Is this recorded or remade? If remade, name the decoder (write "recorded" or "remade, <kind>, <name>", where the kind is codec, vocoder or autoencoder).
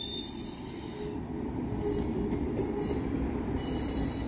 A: recorded